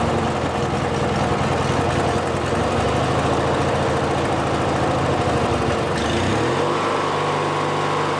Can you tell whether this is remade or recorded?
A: recorded